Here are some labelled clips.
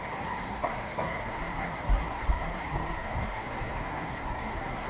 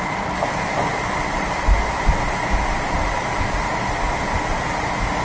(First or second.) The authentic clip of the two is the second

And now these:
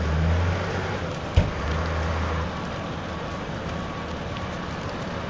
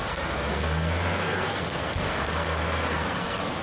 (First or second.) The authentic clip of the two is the first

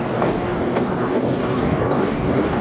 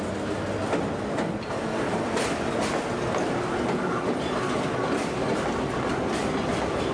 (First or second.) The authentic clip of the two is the second